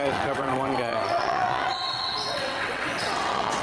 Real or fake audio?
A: fake